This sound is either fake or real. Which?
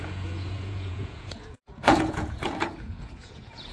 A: fake